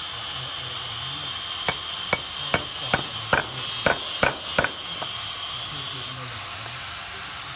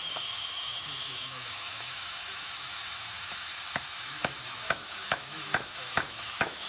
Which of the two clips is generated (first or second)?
second